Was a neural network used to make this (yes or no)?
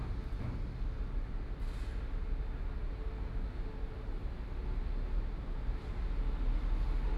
no